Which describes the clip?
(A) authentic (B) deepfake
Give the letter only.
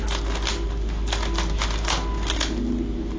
A